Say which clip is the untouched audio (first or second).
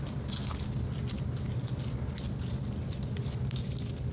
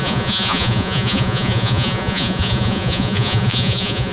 first